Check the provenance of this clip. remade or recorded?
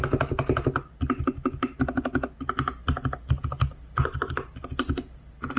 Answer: recorded